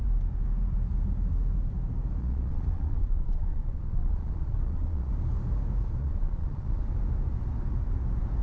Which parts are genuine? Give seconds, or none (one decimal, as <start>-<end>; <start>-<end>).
0.0-2.2; 5.1-6.0; 6.8-8.4